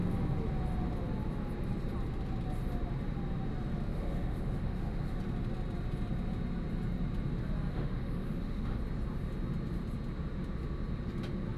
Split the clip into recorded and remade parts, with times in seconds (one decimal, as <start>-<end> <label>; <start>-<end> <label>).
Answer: 0.0-3.9 recorded; 3.9-5.2 remade; 5.2-7.7 recorded; 7.7-8.8 remade; 8.8-11.6 recorded

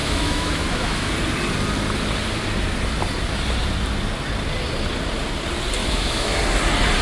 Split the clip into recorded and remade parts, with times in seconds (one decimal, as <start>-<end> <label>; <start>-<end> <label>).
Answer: 0.0-1.1 remade; 1.1-5.8 recorded; 5.8-6.4 remade; 6.4-7.0 recorded